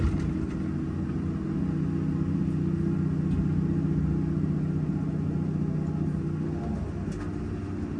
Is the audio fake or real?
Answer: real